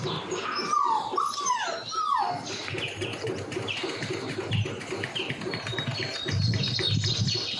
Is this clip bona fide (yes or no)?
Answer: yes